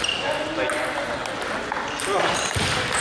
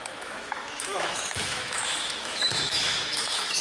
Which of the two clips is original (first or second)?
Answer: first